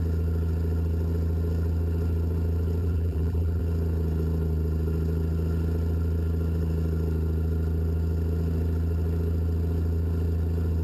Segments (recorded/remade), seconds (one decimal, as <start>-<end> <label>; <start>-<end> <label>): 0.0-2.8 recorded; 2.8-3.6 remade; 3.6-10.8 recorded